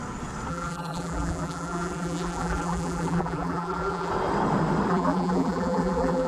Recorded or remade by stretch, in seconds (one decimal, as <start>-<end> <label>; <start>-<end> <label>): 0.0-0.5 recorded; 0.5-4.1 remade; 4.1-4.9 recorded; 4.9-6.3 remade